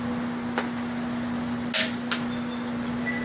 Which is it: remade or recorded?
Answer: recorded